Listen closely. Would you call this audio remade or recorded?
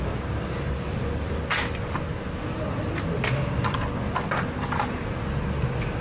recorded